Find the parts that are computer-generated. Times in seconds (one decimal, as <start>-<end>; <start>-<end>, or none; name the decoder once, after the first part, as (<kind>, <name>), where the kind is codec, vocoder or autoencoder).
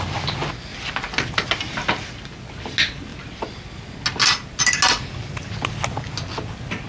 none